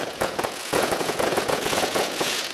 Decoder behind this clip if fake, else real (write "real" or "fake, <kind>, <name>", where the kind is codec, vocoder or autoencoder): fake, vocoder, Vocos